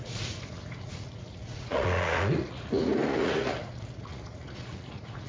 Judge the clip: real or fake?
fake